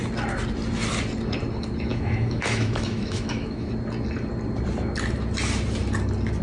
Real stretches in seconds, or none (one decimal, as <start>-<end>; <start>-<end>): 0.0-1.9; 3.7-6.4